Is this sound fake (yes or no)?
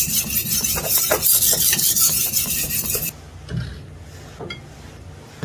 no